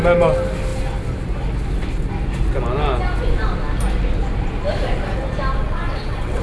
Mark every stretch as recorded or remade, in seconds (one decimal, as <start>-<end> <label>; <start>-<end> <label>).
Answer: 0.0-5.6 recorded; 5.6-6.4 remade